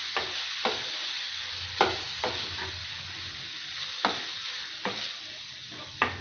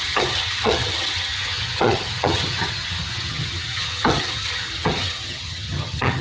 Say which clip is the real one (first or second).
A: first